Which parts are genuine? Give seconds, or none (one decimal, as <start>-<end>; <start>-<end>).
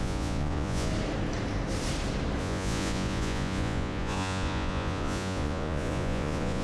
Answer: 0.9-2.4